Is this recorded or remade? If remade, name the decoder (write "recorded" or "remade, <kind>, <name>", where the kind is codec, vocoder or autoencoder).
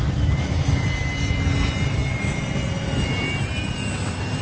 recorded